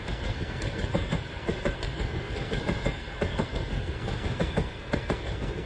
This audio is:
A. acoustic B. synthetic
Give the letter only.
B